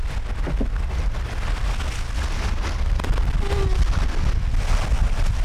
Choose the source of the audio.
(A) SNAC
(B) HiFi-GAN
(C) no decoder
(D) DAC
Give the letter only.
C